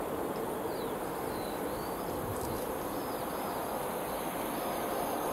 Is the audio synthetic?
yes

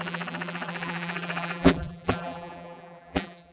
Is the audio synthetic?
yes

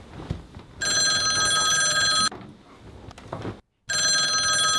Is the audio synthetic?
no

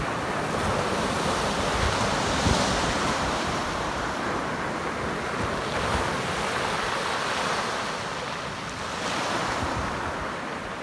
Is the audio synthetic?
no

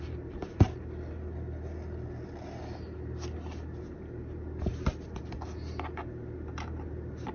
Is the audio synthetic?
no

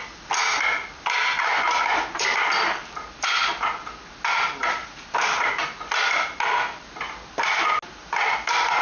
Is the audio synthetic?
no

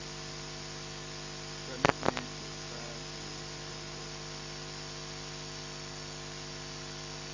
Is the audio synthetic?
no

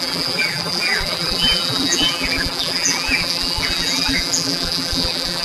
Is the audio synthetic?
yes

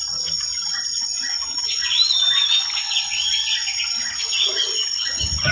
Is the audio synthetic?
no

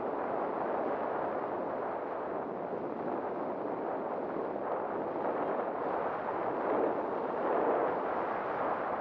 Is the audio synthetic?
no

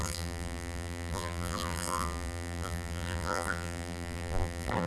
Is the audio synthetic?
yes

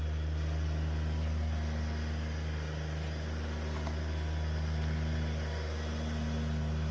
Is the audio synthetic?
no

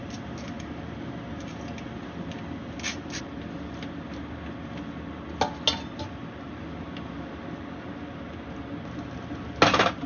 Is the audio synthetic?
no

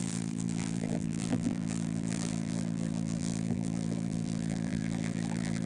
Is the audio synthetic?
yes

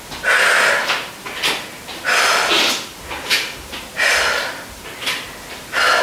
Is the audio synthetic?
no